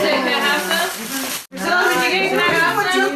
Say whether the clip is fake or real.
real